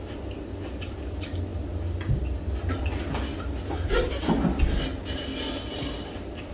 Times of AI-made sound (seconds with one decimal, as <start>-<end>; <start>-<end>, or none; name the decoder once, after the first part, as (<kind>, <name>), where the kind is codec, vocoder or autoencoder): none